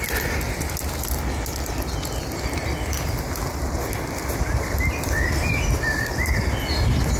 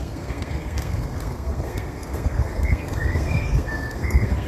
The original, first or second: first